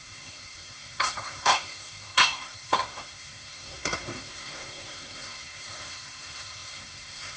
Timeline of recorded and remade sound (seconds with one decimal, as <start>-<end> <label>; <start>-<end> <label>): 0.0-7.4 remade